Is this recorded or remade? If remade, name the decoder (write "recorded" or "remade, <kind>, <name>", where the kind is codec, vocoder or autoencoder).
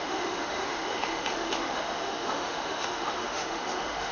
remade, autoencoder, DAC-VAE